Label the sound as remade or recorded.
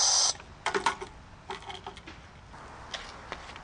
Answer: recorded